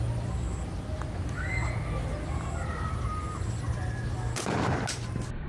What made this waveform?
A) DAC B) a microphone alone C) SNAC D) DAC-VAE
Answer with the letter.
B